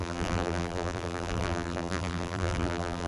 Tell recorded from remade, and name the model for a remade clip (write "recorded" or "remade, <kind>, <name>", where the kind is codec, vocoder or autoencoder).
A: remade, vocoder, BigVGAN v2